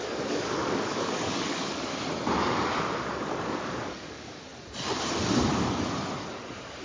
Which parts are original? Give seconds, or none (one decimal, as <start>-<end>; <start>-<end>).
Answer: 1.9-3.1; 4.5-6.8